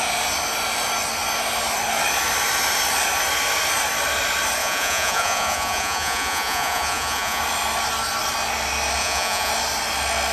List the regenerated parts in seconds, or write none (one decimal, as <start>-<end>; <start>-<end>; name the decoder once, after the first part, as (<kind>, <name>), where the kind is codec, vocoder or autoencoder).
4.6-7.4 (vocoder, Vocos); 9.0-9.5